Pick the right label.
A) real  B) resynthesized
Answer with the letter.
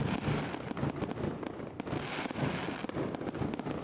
A